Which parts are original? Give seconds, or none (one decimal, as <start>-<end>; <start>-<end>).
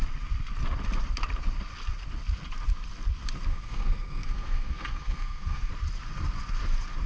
0.0-3.5; 5.7-7.1